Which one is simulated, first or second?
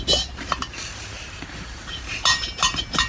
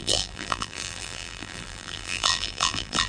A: second